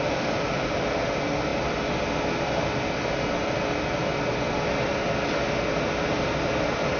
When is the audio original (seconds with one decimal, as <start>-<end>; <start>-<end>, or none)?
0.0-7.0